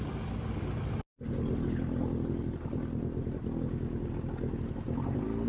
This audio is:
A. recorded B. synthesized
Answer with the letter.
A